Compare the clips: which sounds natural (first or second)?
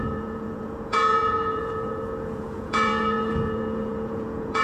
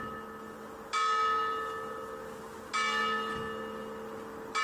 second